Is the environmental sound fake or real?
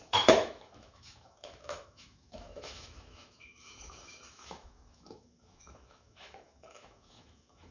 fake